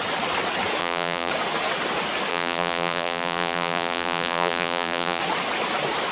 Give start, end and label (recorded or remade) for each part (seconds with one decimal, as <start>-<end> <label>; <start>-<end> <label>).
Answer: 0.0-0.8 recorded; 0.8-1.3 remade; 1.3-2.3 recorded; 2.3-5.2 remade; 5.2-6.1 recorded